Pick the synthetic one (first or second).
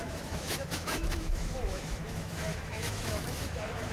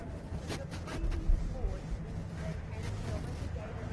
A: first